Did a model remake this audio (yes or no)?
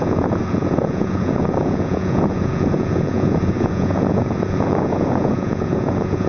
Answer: yes